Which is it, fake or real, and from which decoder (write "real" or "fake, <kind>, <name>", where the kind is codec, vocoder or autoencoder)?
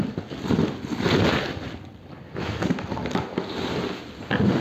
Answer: real